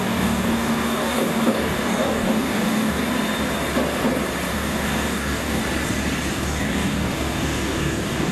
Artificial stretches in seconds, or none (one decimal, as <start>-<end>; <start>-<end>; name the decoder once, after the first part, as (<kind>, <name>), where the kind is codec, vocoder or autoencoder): 0.0-3.0 (codec, DAC); 4.5-5.6; 6.3-8.3